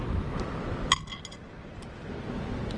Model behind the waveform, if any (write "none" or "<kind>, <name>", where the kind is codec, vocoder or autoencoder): none